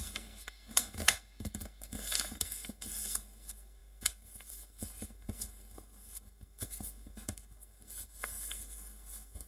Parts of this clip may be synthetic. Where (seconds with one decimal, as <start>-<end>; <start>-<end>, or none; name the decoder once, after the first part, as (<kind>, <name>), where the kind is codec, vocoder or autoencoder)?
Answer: 0.0-9.5 (codec, SNAC)